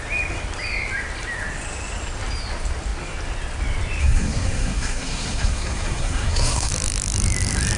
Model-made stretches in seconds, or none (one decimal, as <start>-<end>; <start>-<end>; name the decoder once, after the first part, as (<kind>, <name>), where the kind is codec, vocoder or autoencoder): 4.0-6.7 (codec, SNAC)